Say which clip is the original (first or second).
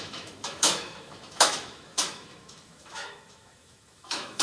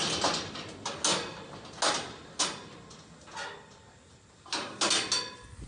second